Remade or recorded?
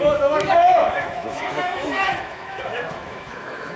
remade